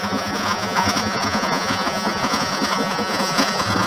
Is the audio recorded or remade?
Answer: remade